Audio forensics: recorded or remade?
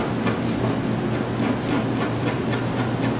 recorded